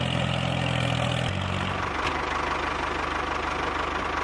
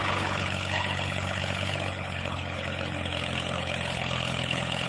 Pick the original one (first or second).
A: first